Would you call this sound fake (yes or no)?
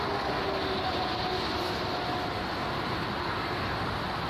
no